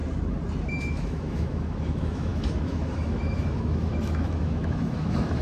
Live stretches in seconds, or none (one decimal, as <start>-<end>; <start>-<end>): 0.0-0.8